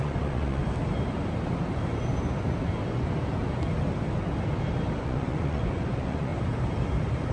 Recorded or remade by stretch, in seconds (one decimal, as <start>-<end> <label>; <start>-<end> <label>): 0.0-0.6 remade; 0.6-5.0 recorded; 5.0-6.3 remade; 6.3-7.3 recorded